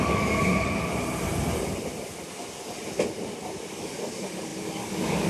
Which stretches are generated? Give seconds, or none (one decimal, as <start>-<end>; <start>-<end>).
0.0-0.5; 3.7-5.3